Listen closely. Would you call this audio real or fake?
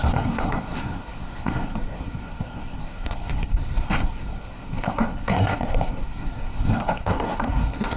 fake